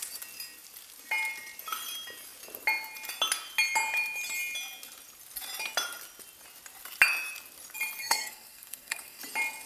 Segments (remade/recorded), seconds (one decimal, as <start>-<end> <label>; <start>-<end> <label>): 0.0-8.0 recorded; 8.0-9.2 remade; 9.2-9.7 recorded